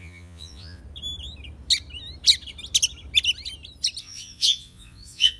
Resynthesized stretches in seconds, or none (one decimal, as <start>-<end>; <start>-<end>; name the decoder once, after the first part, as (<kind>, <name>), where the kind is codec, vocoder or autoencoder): 0.0-0.8 (vocoder, Vocos); 4.0-5.4